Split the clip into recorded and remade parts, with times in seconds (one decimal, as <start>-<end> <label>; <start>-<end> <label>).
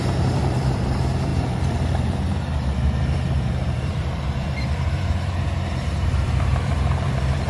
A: 0.0-7.5 remade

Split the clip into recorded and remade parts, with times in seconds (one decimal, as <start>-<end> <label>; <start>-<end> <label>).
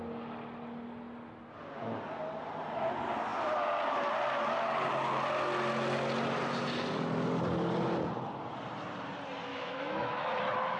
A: 0.0-9.5 recorded; 9.5-10.4 remade; 10.4-10.8 recorded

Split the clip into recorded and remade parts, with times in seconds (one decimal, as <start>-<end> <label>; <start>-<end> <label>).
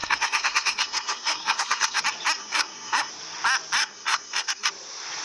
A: 0.0-2.0 remade; 2.0-2.4 recorded; 2.4-3.1 remade; 3.1-3.8 recorded; 3.8-4.7 remade; 4.7-5.2 recorded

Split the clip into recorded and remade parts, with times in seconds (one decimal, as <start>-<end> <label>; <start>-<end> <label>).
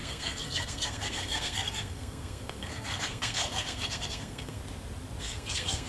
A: 0.0-4.6 remade; 4.6-5.2 recorded; 5.2-5.9 remade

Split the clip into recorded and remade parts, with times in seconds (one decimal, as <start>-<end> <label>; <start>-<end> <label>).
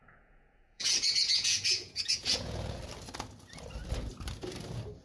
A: 0.0-2.8 remade; 2.8-5.0 recorded